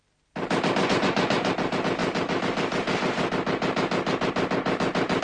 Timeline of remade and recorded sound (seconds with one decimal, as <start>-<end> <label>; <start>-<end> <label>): 0.0-0.8 recorded; 0.8-1.5 remade; 1.5-5.2 recorded